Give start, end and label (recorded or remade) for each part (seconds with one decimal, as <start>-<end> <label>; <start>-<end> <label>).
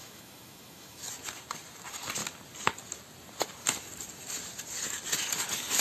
0.0-1.0 remade; 1.0-5.8 recorded